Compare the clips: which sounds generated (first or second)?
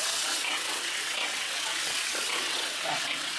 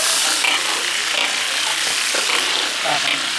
first